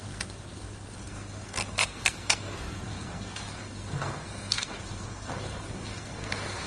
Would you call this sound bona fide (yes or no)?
no